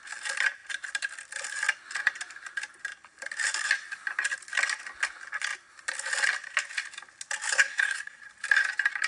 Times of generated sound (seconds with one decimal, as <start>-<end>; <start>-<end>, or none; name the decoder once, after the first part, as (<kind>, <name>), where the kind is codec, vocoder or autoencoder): 7.5-8.2 (codec, SNAC)

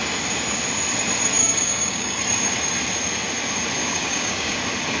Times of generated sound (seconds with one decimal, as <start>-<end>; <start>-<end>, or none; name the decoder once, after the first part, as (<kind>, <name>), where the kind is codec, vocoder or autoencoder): 1.4-2.2 (codec, DAC); 3.8-4.6

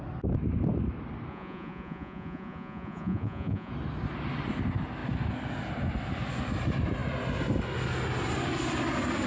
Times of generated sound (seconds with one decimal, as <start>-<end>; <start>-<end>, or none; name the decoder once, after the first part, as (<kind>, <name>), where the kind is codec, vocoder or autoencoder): 1.3-3.7 (vocoder, Vocos)

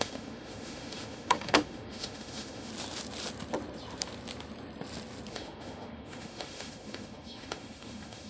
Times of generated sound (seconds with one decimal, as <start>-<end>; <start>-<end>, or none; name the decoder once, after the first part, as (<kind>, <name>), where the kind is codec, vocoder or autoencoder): 0.0-2.7 (autoencoder, DAC-VAE); 5.3-8.3

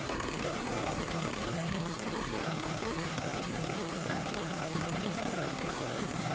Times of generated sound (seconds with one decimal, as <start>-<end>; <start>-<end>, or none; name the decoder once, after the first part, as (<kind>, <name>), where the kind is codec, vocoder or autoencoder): 0.0-6.3 (codec, SNAC)

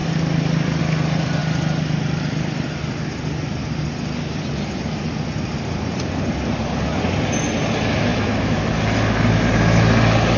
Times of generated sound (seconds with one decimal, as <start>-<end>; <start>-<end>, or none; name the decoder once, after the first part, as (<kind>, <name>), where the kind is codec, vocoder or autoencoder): 8.1-8.6 (autoencoder, DAC-VAE)